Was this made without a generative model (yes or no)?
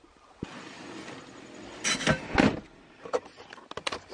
yes